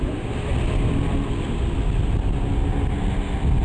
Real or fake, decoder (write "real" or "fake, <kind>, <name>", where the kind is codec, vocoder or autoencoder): real